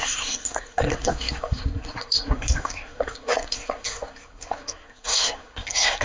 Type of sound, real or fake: fake